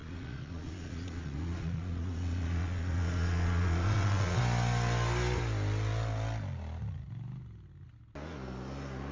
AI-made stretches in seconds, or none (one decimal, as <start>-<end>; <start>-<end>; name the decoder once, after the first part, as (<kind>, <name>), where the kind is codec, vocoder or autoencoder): 0.0-4.4 (vocoder, Vocos)